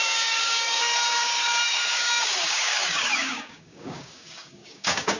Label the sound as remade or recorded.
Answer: remade